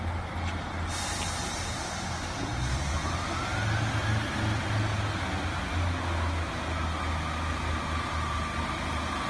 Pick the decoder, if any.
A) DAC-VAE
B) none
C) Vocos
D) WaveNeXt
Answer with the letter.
B